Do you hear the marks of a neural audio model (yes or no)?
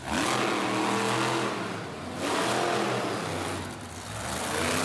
no